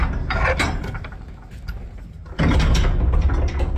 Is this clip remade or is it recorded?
recorded